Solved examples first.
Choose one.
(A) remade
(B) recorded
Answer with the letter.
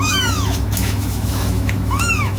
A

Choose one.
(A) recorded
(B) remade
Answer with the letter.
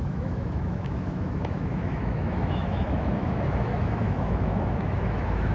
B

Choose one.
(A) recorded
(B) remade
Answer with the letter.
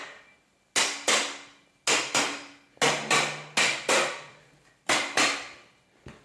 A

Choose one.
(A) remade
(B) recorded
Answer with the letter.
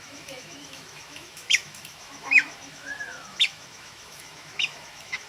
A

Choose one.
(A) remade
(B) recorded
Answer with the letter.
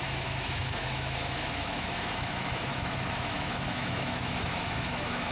A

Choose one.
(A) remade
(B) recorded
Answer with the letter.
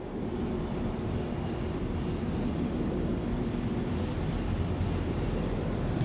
B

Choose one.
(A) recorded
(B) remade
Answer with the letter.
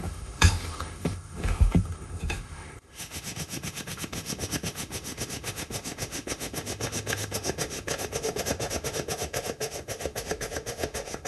B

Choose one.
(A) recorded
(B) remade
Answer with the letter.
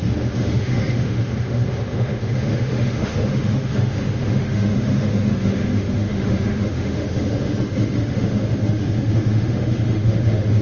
B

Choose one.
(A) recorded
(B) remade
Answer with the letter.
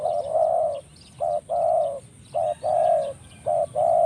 A